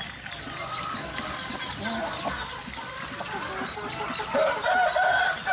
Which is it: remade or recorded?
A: recorded